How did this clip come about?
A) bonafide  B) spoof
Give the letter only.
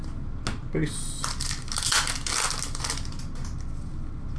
A